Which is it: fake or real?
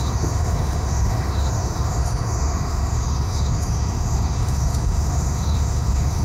fake